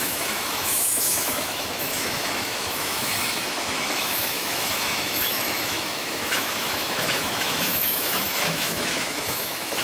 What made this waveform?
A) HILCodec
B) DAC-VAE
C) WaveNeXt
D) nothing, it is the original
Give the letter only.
B